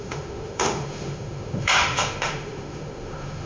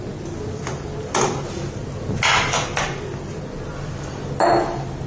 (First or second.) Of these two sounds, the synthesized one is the first